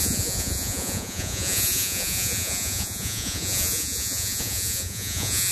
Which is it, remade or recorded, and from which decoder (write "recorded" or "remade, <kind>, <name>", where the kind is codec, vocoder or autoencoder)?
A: remade, vocoder, Vocos